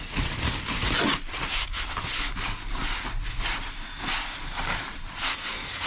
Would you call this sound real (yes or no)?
yes